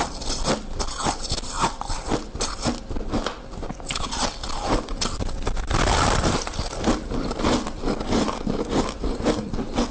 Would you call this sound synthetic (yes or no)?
no